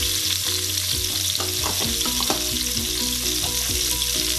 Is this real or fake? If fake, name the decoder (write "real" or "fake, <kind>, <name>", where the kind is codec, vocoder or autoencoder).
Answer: real